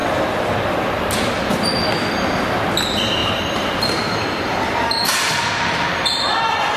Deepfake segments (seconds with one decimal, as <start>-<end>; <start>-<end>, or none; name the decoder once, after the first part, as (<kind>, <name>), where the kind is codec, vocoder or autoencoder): 3.2-6.8 (vocoder, BigVGAN v2)